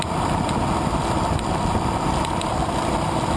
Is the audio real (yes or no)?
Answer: yes